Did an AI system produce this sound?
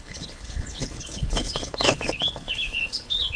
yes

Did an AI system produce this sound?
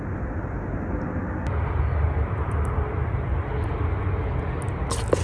no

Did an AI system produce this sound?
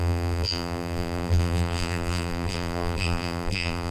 yes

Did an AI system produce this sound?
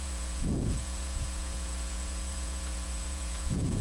yes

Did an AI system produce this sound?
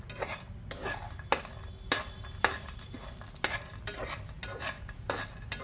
no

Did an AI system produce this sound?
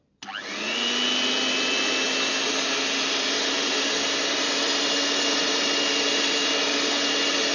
no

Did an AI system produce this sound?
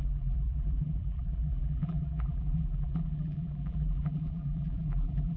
yes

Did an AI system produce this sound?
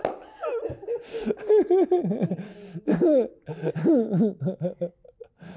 no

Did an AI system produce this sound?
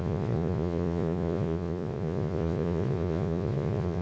yes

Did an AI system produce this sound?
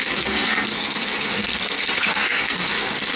yes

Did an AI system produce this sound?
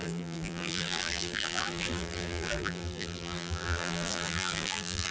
yes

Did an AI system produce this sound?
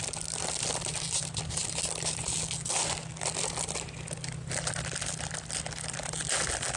no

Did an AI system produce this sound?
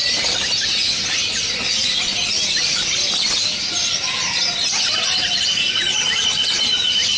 no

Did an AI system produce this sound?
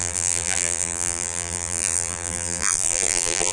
yes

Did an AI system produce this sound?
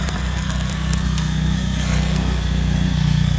yes